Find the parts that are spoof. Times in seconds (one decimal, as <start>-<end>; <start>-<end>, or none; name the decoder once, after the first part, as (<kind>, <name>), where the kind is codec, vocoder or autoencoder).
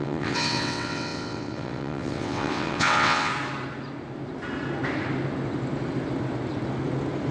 0.0-3.3 (vocoder, WaveNeXt)